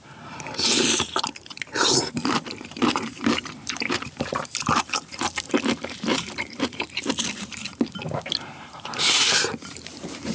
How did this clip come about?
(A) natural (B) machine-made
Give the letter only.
B